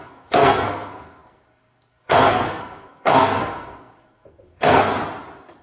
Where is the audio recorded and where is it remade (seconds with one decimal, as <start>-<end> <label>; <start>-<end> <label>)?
0.0-4.9 remade; 4.9-5.6 recorded